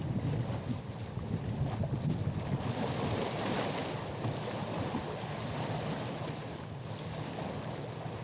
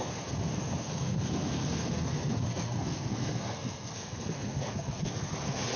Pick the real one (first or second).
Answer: first